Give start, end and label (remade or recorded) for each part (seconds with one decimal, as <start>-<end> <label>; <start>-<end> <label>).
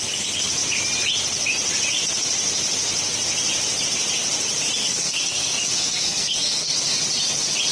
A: 0.0-4.8 recorded; 4.8-6.7 remade; 6.7-7.7 recorded